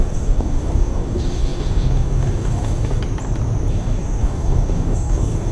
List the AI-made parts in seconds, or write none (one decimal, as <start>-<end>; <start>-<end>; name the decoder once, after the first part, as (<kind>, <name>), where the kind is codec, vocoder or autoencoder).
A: 0.0-3.0 (codec, DAC); 3.7-5.5